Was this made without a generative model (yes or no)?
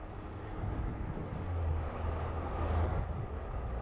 no